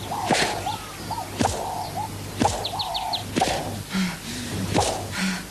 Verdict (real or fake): real